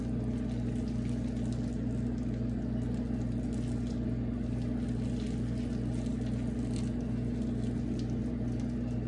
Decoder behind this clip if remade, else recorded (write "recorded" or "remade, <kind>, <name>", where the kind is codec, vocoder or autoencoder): recorded